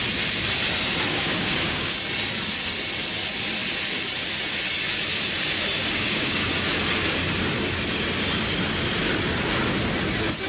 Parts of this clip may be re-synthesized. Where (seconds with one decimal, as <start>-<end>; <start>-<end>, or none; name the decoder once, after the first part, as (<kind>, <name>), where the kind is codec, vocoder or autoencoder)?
1.1-1.9 (codec, DAC); 5.8-6.5